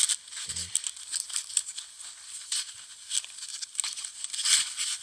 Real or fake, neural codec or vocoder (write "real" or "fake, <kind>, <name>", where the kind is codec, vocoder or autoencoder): real